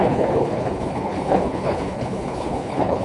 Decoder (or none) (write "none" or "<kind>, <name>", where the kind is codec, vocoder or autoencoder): codec, HILCodec